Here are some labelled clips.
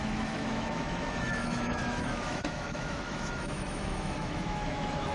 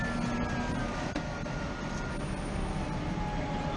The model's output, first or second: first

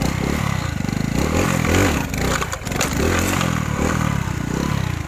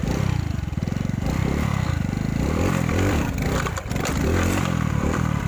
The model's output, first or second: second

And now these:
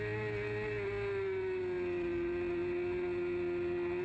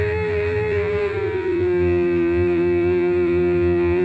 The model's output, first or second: second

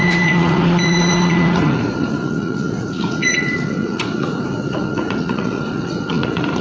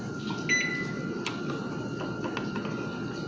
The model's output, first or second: first